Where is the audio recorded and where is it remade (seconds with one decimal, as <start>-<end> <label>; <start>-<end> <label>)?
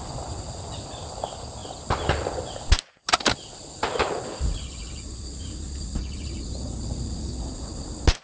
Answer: 0.0-8.2 recorded